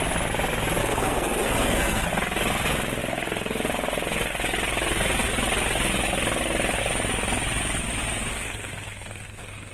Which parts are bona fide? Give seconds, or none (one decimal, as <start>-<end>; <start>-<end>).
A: 0.0-0.8; 2.1-8.3